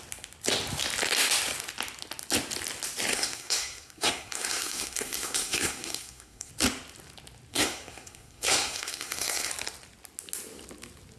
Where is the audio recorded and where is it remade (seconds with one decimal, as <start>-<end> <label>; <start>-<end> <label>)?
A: 0.0-3.1 recorded; 3.1-6.5 remade; 6.5-7.5 recorded; 7.5-9.5 remade; 9.5-11.2 recorded